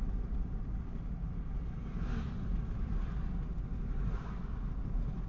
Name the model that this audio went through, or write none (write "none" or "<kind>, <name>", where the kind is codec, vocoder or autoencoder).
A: none